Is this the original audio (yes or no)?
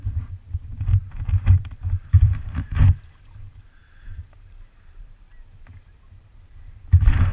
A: no